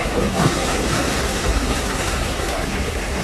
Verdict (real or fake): fake